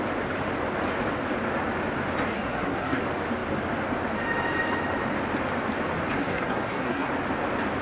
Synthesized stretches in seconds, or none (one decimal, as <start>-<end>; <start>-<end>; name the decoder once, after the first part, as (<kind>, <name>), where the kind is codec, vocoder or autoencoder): 2.3-3.0 (codec, SNAC); 6.2-7.1